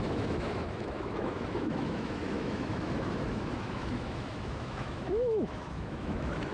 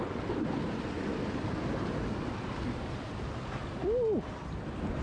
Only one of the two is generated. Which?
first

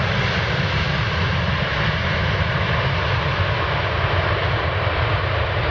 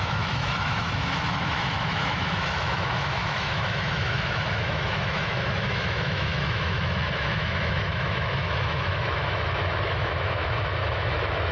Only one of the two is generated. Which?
second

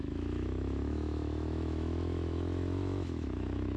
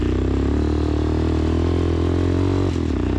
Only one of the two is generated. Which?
first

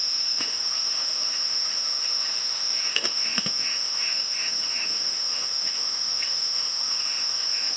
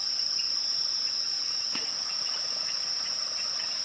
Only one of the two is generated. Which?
first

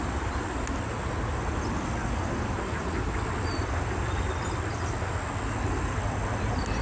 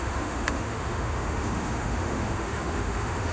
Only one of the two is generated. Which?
second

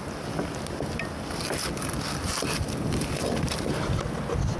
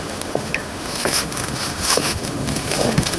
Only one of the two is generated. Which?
second